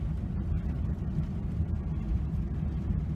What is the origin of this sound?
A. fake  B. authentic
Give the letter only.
B